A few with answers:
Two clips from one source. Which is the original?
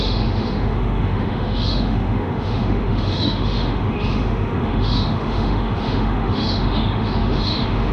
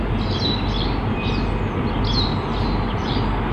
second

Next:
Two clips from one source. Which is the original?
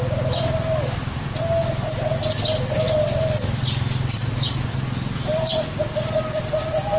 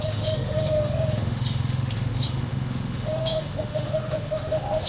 first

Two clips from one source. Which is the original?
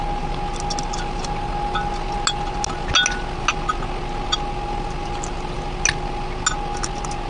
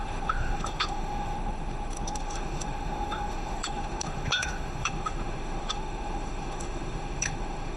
first